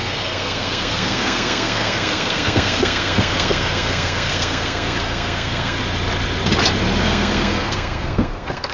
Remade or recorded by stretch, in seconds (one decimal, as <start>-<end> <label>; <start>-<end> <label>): 0.0-5.8 remade; 5.8-7.0 recorded; 7.0-8.7 remade